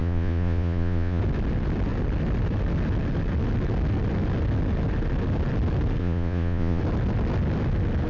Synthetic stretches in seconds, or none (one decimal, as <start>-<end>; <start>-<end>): 0.0-1.2; 6.0-6.8